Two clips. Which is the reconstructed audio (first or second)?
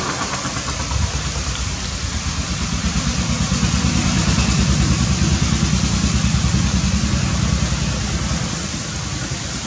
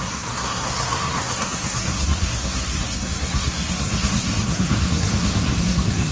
second